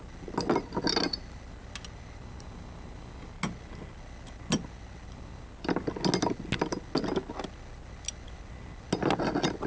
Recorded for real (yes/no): yes